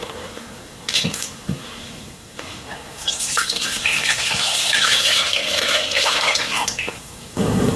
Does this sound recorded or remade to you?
remade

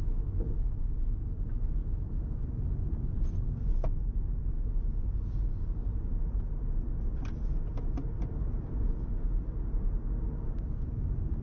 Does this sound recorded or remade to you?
recorded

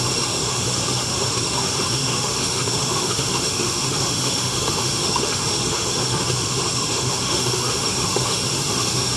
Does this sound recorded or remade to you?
remade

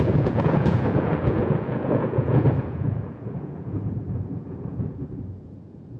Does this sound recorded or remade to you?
remade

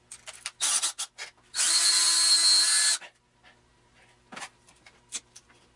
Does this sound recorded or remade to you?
recorded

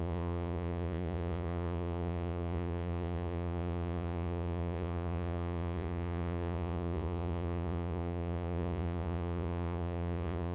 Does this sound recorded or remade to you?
remade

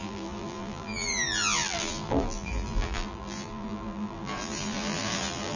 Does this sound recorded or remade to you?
remade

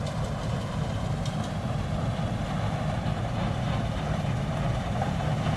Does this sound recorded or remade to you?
recorded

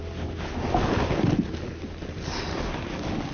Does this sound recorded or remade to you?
recorded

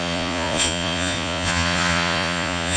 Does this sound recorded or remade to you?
remade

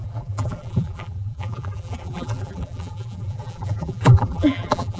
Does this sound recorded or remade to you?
remade